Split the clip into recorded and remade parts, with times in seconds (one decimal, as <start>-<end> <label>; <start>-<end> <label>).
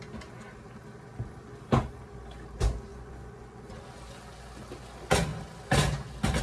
0.0-2.9 recorded; 2.9-3.6 remade; 3.6-6.4 recorded